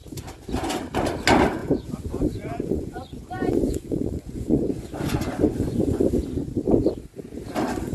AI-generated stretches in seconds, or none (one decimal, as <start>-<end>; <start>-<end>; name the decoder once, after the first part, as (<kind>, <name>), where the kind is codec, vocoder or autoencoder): 1.6-6.0 (vocoder, Vocos)